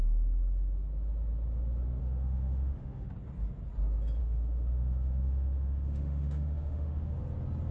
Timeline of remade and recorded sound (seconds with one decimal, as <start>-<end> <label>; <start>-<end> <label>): 0.0-2.0 recorded; 2.0-3.1 remade; 3.1-4.2 recorded; 4.2-7.2 remade; 7.2-7.7 recorded